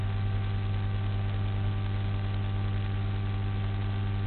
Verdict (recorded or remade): recorded